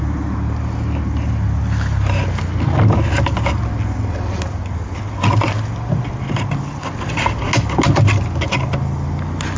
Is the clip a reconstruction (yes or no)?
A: no